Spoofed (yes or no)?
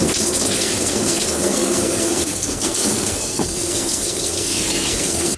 yes